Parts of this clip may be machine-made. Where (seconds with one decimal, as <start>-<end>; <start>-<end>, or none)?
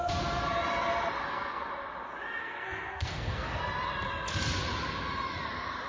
1.2-1.7; 2.4-3.6